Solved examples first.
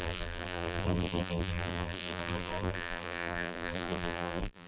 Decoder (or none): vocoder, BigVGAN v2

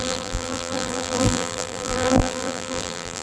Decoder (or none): vocoder, BigVGAN v2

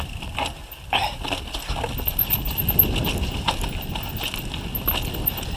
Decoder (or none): none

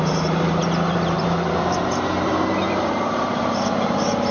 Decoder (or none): vocoder, BigVGAN v2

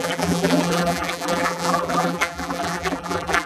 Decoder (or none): vocoder, BigVGAN v2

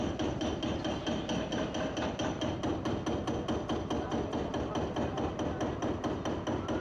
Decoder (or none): none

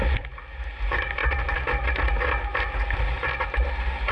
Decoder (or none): none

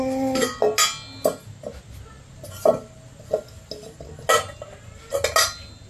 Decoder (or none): none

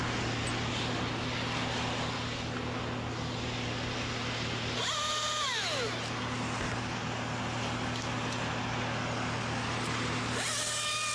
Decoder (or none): none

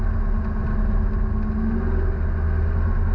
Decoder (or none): none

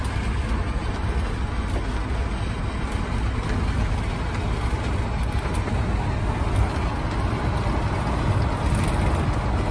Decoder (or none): none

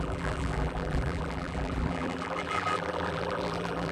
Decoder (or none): vocoder, BigVGAN v2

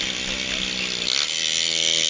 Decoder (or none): none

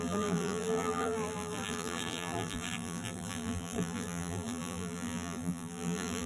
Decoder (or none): vocoder, BigVGAN v2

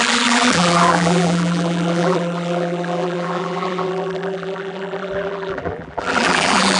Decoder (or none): vocoder, BigVGAN v2